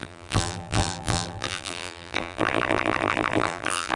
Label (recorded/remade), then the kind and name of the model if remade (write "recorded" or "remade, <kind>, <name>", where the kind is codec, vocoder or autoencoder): remade, vocoder, BigVGAN v2